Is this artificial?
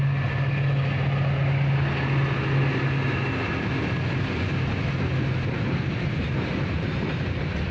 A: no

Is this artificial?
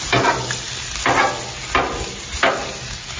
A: no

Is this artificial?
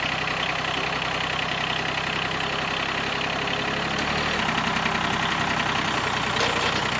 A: no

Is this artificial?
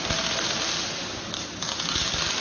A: no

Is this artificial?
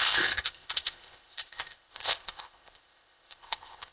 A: yes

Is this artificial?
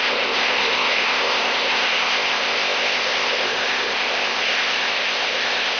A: yes